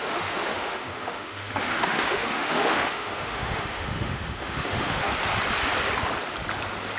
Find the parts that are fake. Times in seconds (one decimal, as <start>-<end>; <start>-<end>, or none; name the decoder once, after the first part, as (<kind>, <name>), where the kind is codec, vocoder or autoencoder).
0.0-5.1 (autoencoder, DAC-VAE)